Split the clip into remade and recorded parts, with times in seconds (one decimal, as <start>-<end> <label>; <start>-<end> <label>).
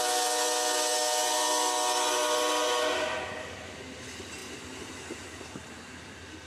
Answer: 0.0-6.5 recorded